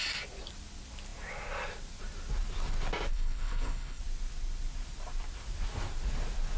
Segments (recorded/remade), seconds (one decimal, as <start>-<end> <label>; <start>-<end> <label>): 0.0-3.1 recorded; 3.1-4.0 remade; 4.0-6.6 recorded